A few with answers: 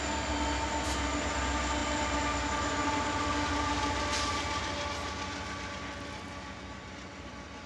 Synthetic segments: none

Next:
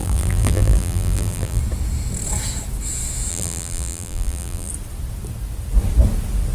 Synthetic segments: 0.0-1.6 (vocoder, BigVGAN v2); 3.3-4.7

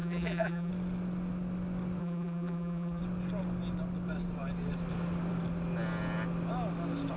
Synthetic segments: 0.0-0.7 (vocoder, BigVGAN v2); 2.0-3.0

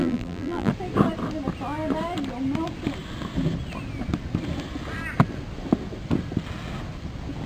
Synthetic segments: 0.0-0.7 (vocoder, BigVGAN v2)

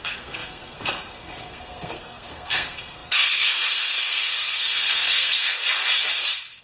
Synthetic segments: 0.0-5.6 (codec, SNAC)

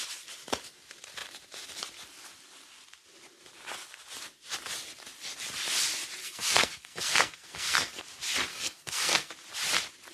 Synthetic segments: 6.2-8.0 (codec, SNAC); 8.5-9.3

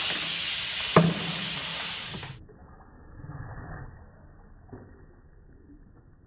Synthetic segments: none